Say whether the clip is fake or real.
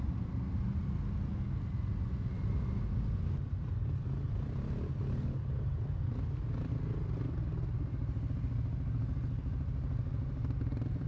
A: real